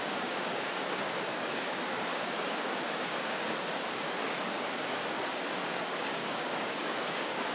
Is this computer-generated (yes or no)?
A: yes